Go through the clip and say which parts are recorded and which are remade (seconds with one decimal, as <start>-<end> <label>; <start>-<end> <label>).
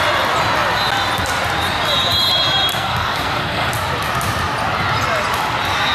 0.0-2.7 recorded; 2.7-3.7 remade; 3.7-5.9 recorded